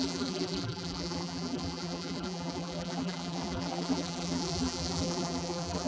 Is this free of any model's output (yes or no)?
no